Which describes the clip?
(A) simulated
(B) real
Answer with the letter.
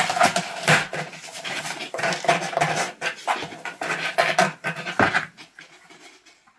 B